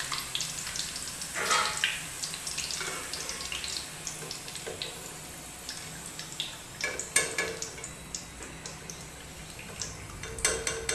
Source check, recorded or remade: recorded